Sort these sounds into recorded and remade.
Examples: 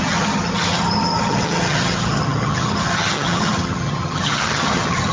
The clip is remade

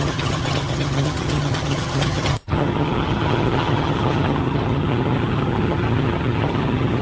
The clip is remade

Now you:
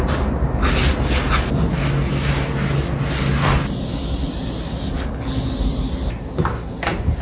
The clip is recorded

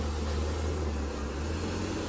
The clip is recorded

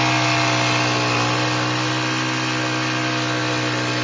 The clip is recorded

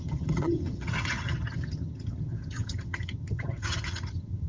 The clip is remade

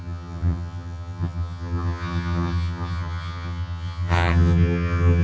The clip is remade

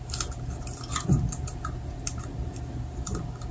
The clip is recorded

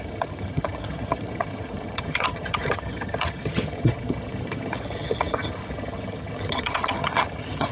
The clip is remade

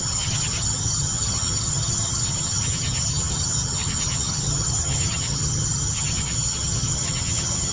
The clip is remade